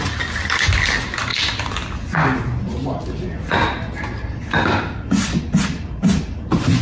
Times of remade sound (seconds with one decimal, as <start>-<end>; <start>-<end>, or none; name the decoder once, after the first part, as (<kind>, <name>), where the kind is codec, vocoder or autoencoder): none